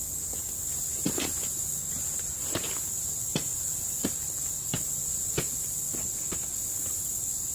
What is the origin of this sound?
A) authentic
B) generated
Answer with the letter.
A